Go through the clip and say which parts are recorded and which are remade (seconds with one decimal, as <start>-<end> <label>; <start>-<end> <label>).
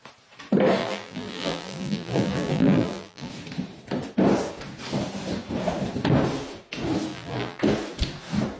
0.0-0.8 recorded; 0.8-3.3 remade; 3.3-7.1 recorded; 7.1-7.6 remade; 7.6-8.6 recorded